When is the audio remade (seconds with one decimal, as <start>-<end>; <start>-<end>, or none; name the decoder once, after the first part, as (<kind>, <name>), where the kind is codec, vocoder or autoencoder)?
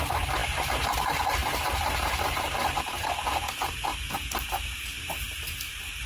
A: none